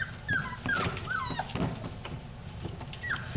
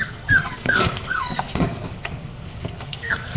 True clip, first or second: first